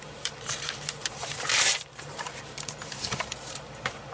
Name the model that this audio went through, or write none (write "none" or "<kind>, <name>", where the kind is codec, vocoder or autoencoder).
vocoder, BigVGAN v2